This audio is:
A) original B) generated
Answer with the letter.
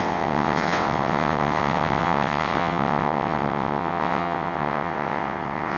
B